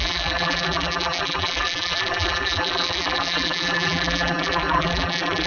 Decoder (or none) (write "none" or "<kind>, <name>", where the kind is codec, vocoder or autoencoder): vocoder, BigVGAN v2